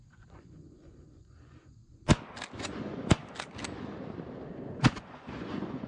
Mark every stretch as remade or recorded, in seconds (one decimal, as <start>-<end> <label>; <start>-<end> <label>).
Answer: 0.0-1.8 remade; 1.8-2.6 recorded; 2.6-3.2 remade; 3.2-4.5 recorded; 4.5-5.9 remade